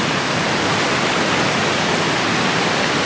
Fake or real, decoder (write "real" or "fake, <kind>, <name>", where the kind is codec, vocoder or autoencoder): real